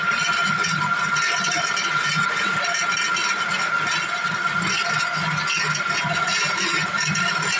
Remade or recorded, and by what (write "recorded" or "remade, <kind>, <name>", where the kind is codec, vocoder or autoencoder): recorded